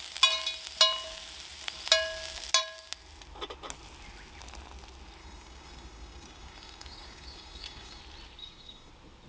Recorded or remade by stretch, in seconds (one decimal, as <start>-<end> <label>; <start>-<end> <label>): 0.0-5.2 recorded; 5.2-8.0 remade; 8.0-8.4 recorded; 8.4-8.9 remade; 8.9-9.3 recorded

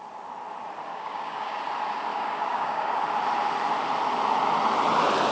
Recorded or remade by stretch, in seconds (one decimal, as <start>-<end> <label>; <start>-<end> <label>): 0.0-0.9 recorded; 0.9-1.6 remade; 1.6-2.1 recorded; 2.1-2.9 remade; 2.9-5.3 recorded

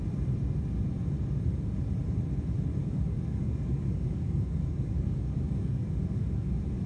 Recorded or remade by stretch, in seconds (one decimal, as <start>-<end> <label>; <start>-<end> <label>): 0.0-2.8 recorded; 2.8-6.5 remade; 6.5-6.9 recorded

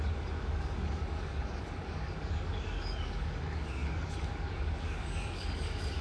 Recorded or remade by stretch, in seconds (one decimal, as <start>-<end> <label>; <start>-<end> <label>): 0.0-6.0 remade

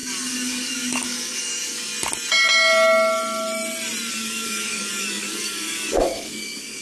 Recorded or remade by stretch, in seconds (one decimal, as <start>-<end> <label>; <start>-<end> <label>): 0.0-1.9 remade; 1.9-4.1 recorded; 4.1-6.8 remade

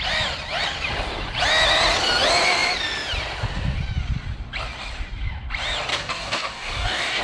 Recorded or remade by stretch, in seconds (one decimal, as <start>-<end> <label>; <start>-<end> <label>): 0.0-5.9 recorded; 5.9-7.2 remade

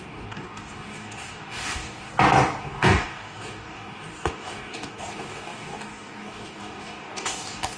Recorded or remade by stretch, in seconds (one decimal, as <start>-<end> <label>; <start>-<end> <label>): 0.0-2.1 remade; 2.1-2.6 recorded; 2.6-7.8 remade

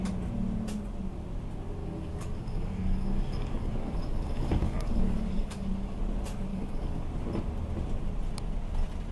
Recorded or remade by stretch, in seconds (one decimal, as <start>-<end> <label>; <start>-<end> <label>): 0.0-1.8 recorded; 1.8-6.0 remade; 6.0-6.5 recorded; 6.5-7.0 remade; 7.0-9.1 recorded